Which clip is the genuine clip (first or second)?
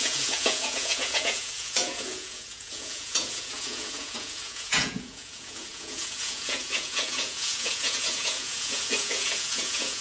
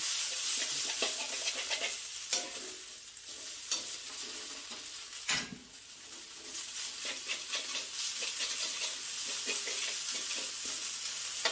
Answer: second